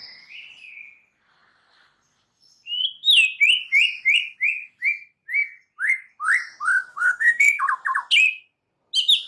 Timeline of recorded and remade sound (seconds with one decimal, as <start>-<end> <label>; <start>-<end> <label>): 0.0-6.9 recorded; 6.9-7.6 remade; 7.6-9.3 recorded